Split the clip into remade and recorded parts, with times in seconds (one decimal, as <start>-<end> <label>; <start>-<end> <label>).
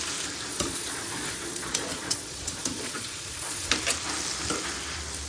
0.0-0.5 recorded; 0.5-3.7 remade; 3.7-5.3 recorded